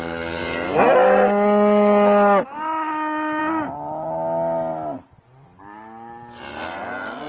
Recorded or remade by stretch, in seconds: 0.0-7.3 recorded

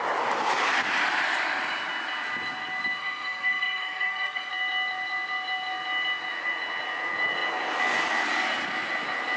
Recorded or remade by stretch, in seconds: 0.0-3.0 recorded; 3.0-4.5 remade; 4.5-9.4 recorded

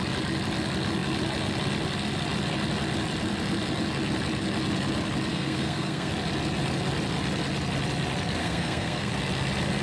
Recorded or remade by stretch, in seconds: 0.0-5.3 recorded; 5.3-6.1 remade; 6.1-8.4 recorded; 8.4-9.1 remade; 9.1-9.8 recorded

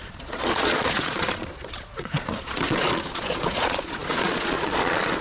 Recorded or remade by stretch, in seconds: 0.0-5.2 remade